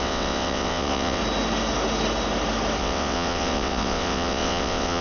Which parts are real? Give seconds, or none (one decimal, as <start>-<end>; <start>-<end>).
1.2-2.8